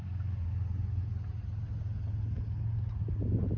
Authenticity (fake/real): real